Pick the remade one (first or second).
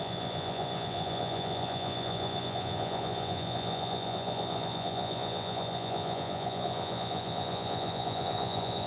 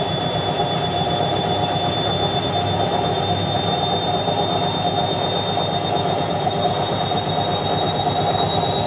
first